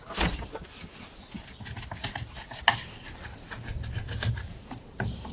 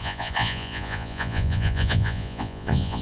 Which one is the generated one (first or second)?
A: second